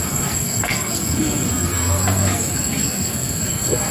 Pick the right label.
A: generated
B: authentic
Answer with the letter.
A